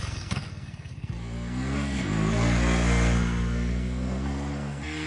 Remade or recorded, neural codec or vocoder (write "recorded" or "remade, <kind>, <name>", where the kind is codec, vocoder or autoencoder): remade, codec, SNAC